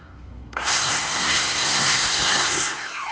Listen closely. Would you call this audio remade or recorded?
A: remade